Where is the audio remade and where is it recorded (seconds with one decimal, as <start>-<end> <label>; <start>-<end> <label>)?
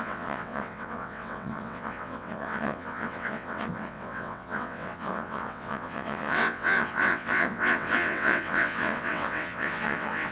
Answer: 0.0-10.3 remade